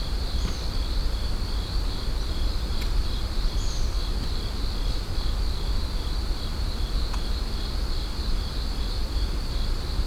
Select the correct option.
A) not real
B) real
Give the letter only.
B